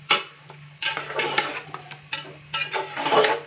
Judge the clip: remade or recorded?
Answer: recorded